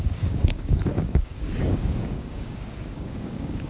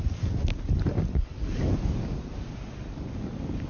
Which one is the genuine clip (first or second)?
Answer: second